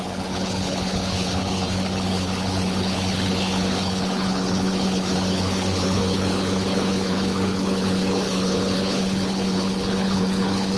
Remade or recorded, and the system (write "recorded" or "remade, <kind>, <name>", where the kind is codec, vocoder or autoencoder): remade, codec, HILCodec